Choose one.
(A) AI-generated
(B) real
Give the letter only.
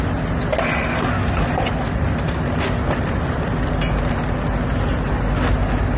B